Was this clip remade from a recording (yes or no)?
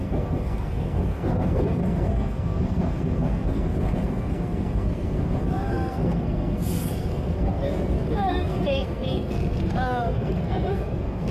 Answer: yes